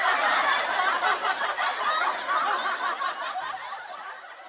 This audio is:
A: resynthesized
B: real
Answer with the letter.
B